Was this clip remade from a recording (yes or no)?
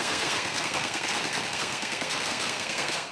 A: yes